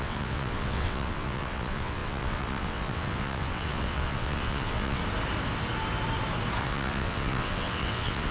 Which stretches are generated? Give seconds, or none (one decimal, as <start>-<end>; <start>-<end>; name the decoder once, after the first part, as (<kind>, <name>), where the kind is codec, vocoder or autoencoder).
0.0-5.0 (vocoder, WaveNeXt); 6.6-8.3